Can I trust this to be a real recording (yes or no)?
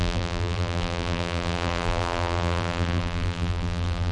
no